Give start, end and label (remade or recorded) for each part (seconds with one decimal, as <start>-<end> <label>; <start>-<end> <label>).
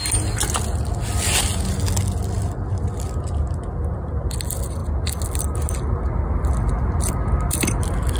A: 0.0-8.2 recorded